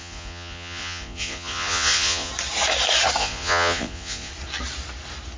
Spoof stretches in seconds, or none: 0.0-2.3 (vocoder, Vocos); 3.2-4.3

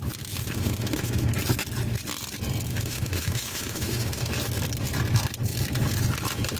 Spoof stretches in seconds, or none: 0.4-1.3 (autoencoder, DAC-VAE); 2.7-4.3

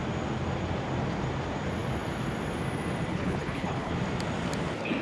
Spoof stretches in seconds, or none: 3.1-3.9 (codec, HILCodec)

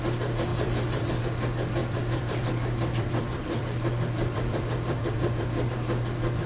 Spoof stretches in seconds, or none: 0.5-1.1 (vocoder, BigVGAN v2); 1.8-5.7